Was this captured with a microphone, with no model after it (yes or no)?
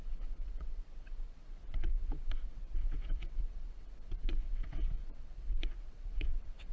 no